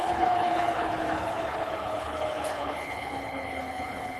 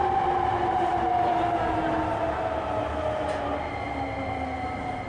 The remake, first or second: first